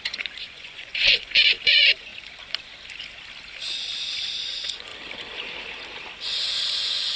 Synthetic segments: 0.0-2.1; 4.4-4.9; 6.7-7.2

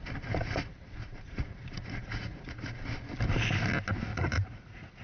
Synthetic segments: 1.0-2.8; 4.1-5.0

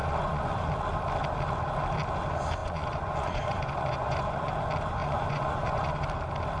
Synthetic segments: 0.0-0.7; 2.6-4.5; 5.0-6.0

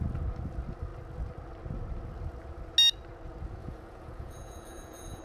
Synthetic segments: 3.6-5.2